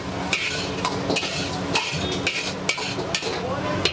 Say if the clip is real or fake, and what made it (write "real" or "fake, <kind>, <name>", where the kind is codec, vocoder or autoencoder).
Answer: real